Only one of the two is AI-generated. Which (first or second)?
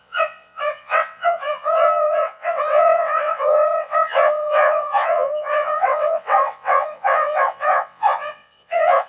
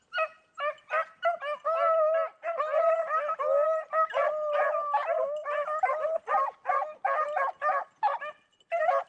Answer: first